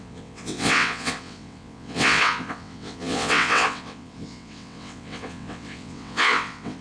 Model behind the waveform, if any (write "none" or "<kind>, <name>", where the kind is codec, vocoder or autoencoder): vocoder, WaveNeXt